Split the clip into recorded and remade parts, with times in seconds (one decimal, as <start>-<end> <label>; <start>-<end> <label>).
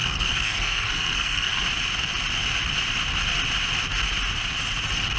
0.0-1.6 remade; 1.6-5.2 recorded